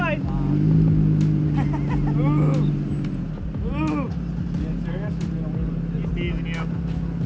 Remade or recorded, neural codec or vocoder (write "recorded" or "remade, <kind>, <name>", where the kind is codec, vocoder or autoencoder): recorded